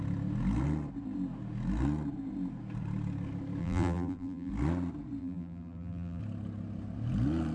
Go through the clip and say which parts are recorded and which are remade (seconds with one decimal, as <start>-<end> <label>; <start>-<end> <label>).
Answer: 0.0-3.6 recorded; 3.6-4.5 remade; 4.5-5.2 recorded; 5.2-6.2 remade; 6.2-7.5 recorded